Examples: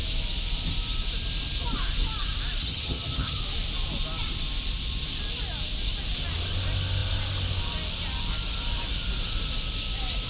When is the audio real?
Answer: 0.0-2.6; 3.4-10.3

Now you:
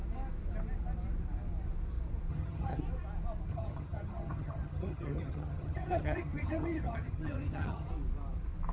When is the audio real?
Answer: 0.0-2.3; 2.8-3.5; 7.9-8.7

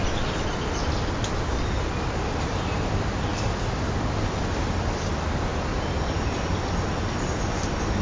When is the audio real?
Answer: 0.0-8.0

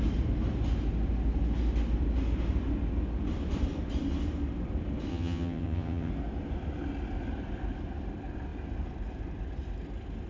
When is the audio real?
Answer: 0.0-5.1; 6.1-10.3

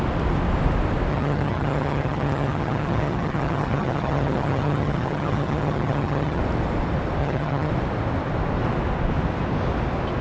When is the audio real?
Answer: 0.0-1.1; 6.4-7.2; 7.7-10.2

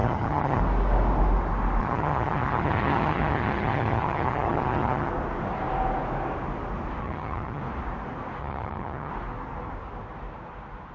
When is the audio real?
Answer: 0.6-1.8; 5.1-7.0; 7.6-8.4; 9.1-10.9

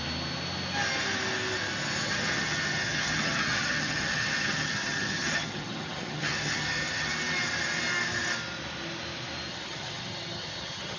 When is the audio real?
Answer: 0.0-2.0; 7.1-9.5

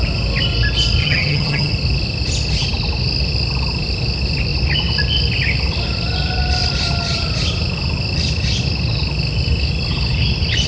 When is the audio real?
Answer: 0.0-1.0; 1.7-10.7